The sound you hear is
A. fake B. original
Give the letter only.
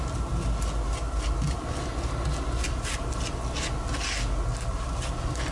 B